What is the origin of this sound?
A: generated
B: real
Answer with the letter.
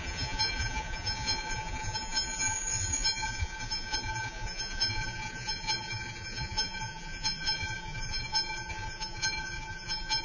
A